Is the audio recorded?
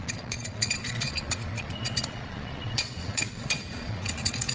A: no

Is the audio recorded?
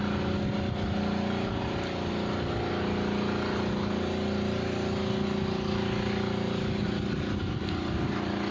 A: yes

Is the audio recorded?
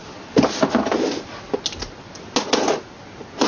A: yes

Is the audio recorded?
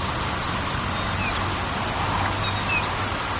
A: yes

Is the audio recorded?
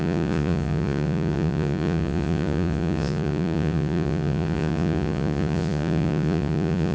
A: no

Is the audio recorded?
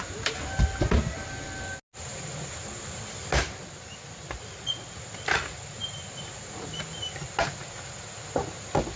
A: yes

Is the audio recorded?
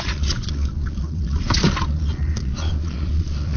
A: no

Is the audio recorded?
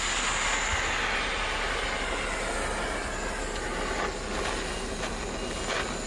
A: yes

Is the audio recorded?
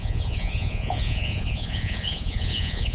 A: no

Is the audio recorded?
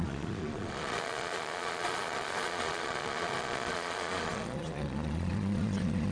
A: no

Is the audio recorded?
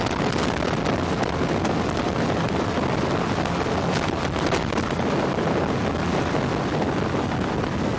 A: yes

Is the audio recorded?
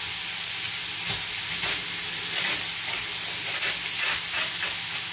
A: yes